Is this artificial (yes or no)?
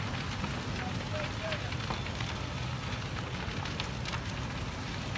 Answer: no